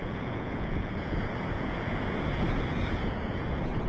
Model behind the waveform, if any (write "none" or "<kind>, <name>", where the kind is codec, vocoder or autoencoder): vocoder, Vocos